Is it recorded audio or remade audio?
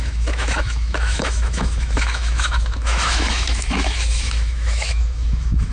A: remade